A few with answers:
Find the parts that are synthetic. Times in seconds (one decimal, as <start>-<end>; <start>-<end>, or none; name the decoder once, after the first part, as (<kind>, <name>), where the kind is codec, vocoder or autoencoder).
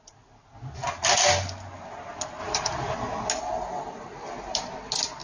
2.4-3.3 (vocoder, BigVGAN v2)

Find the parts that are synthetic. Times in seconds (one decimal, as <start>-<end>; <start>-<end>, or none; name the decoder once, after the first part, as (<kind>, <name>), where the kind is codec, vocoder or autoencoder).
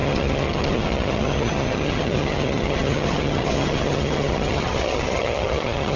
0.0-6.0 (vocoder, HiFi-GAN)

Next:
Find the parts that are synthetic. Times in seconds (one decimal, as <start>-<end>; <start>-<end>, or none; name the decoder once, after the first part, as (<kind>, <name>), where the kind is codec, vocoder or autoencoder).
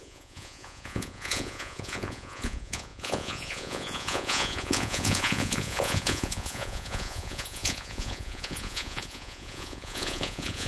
0.0-10.7 (vocoder, Vocos)